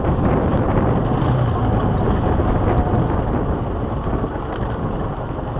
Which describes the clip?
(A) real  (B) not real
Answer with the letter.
A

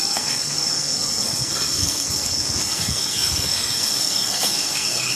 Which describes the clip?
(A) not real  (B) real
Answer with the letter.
A